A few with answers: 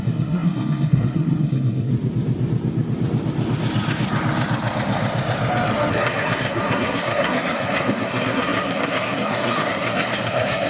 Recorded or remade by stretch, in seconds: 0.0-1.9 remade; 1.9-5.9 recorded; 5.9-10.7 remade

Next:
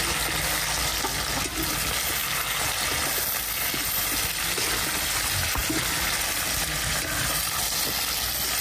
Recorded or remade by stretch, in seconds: 0.0-8.6 recorded

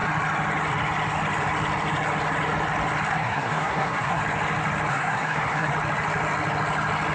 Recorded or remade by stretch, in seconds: 0.0-3.1 recorded; 3.1-4.2 remade; 4.2-4.9 recorded; 4.9-5.7 remade; 5.7-7.1 recorded